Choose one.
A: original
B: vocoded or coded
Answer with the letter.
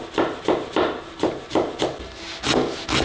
A